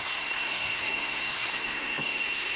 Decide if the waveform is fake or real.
fake